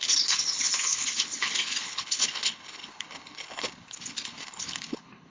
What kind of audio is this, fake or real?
fake